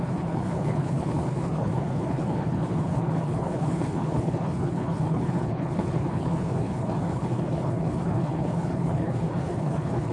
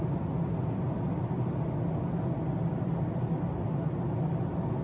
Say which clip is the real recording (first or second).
second